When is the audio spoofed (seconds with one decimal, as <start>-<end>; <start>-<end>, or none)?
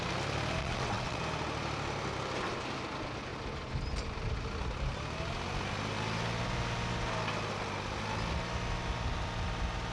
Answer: 0.6-1.2